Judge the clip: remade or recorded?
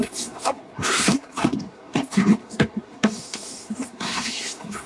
remade